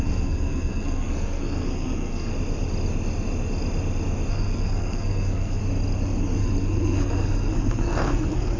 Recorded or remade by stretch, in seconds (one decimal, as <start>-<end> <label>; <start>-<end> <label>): 0.0-2.3 remade; 2.3-4.3 recorded; 4.3-5.6 remade; 5.6-6.2 recorded; 6.2-8.6 remade